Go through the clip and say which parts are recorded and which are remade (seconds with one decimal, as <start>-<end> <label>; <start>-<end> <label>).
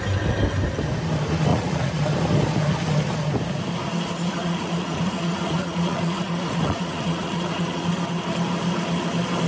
0.0-1.5 recorded; 1.5-2.0 remade; 2.0-4.4 recorded; 4.4-7.9 remade; 7.9-9.5 recorded